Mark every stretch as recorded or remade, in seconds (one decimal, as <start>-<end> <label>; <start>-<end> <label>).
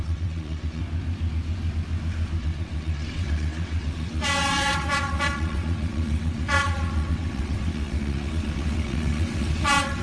0.0-0.8 remade; 0.8-2.4 recorded; 2.4-10.0 remade